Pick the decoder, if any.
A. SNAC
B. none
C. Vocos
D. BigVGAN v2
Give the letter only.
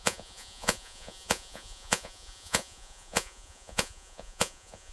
C